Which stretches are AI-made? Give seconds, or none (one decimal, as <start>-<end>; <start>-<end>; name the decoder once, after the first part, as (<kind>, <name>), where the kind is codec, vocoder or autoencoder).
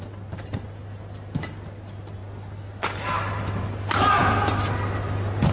none